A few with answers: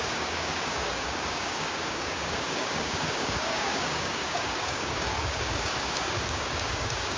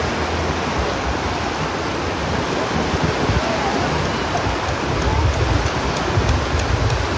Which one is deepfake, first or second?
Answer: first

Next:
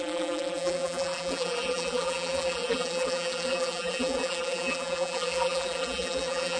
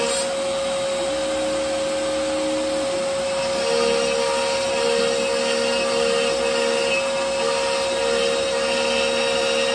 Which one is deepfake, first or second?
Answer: first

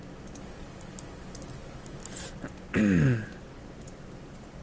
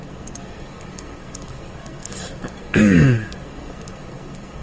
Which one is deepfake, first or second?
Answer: second